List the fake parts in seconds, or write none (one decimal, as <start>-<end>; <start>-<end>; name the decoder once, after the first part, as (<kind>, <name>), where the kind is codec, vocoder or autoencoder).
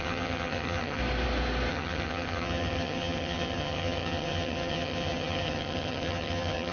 0.0-1.0 (vocoder, HiFi-GAN); 1.7-6.7